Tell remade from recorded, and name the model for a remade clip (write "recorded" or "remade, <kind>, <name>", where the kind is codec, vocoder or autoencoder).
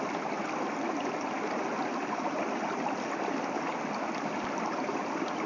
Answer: recorded